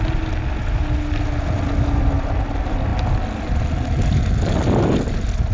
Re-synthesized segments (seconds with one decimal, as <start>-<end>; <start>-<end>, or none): none